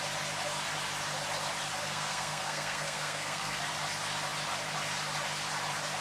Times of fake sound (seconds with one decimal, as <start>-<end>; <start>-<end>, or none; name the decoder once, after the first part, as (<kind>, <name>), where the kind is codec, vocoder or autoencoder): 1.8-3.6 (codec, SNAC)